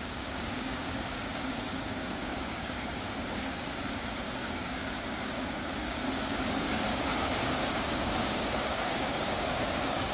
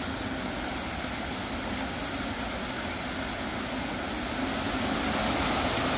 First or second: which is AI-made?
first